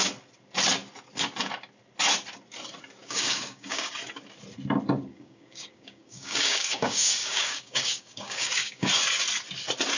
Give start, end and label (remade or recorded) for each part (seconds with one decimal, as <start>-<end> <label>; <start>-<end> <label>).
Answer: 0.0-3.0 recorded; 3.0-3.9 remade; 3.9-5.1 recorded; 5.1-8.9 remade; 8.9-10.0 recorded